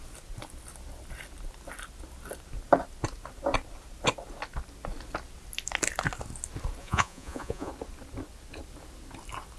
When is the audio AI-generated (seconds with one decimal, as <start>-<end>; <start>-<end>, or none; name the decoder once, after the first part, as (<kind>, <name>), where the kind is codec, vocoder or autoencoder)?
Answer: 6.8-7.7 (vocoder, Vocos)